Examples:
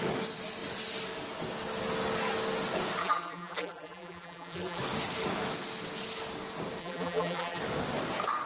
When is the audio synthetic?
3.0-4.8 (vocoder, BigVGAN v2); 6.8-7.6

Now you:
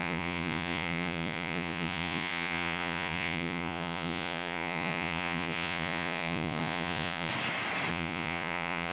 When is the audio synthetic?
0.0-7.3 (vocoder, Vocos); 7.9-8.9